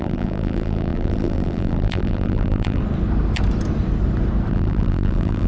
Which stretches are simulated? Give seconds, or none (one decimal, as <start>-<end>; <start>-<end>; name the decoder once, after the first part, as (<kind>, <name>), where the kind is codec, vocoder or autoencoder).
0.0-2.8 (vocoder, BigVGAN v2); 4.5-5.5